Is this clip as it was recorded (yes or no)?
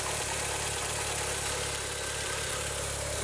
yes